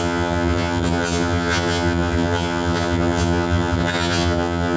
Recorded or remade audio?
remade